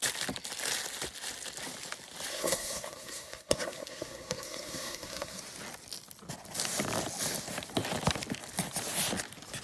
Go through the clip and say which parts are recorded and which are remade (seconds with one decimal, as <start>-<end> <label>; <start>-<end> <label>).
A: 0.0-2.3 recorded; 2.3-5.4 remade; 5.4-9.6 recorded